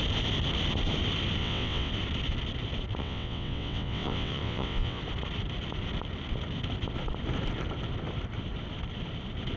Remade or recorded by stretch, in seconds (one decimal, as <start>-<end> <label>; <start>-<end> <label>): 0.0-1.4 recorded; 1.4-1.9 remade; 1.9-3.0 recorded; 3.0-5.0 remade; 5.0-9.6 recorded